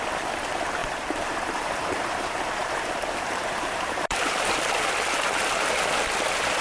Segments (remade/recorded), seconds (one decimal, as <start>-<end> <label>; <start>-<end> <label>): 0.0-0.8 recorded; 0.8-4.8 remade; 4.8-6.6 recorded